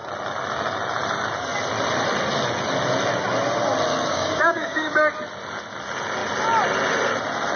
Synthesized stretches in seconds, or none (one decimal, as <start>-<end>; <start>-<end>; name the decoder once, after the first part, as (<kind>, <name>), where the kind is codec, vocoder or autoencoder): 4.1-4.9 (codec, DAC)